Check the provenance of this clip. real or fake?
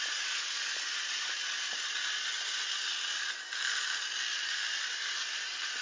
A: real